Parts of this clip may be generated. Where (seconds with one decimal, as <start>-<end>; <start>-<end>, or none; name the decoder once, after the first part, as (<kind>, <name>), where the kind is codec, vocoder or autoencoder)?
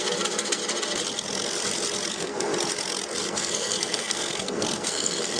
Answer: 0.0-0.6 (codec, SNAC); 2.1-2.5; 3.3-5.4